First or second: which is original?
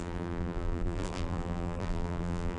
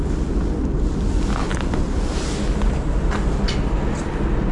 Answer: second